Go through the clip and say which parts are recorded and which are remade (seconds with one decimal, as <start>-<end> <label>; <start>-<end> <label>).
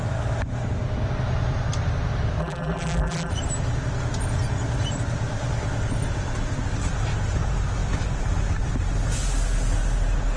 0.0-2.4 recorded; 2.4-3.3 remade; 3.3-10.4 recorded